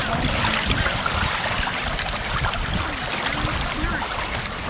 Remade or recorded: recorded